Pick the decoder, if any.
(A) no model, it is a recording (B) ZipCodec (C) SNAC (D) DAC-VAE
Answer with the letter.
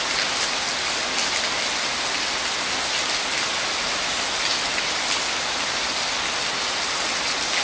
A